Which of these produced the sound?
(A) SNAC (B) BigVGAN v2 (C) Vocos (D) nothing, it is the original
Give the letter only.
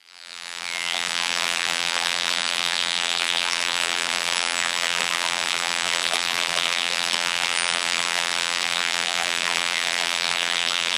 B